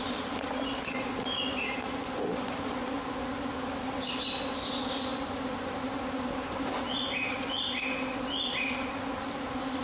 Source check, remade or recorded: recorded